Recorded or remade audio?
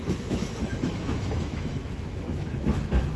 remade